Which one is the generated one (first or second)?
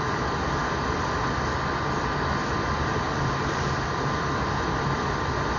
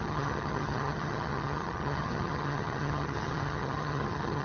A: second